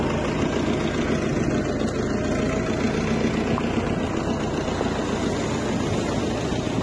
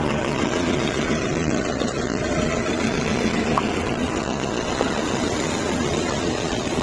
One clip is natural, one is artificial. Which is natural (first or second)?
first